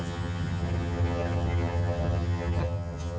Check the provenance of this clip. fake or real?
fake